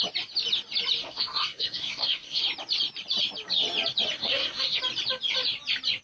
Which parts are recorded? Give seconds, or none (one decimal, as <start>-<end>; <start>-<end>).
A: 0.0-1.0; 2.4-4.2; 4.8-6.0